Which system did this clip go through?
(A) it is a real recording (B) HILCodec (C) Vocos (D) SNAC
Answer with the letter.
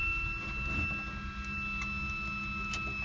A